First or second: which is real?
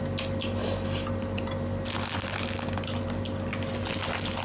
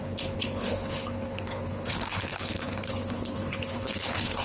first